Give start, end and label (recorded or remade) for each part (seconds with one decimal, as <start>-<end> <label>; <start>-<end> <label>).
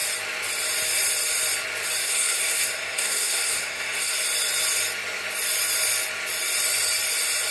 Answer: 0.0-2.0 recorded; 2.0-4.2 remade; 4.2-7.5 recorded